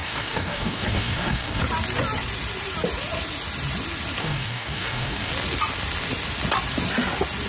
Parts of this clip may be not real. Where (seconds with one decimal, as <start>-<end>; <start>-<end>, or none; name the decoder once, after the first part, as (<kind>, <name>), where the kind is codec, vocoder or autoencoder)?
0.0-1.6 (codec, DAC); 4.2-5.3